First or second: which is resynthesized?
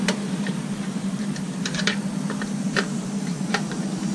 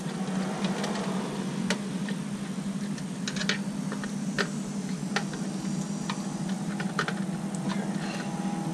first